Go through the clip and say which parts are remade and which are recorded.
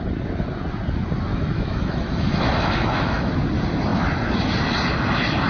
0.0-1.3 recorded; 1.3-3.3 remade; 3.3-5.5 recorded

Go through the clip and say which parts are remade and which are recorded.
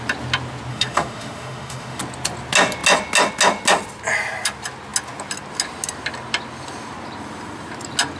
0.0-0.7 recorded; 0.7-2.0 remade; 2.0-8.2 recorded